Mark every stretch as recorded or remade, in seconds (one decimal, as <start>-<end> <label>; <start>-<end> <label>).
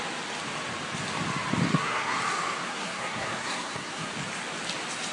0.0-1.7 recorded; 1.7-2.2 remade; 2.2-2.7 recorded; 2.7-4.1 remade; 4.1-5.1 recorded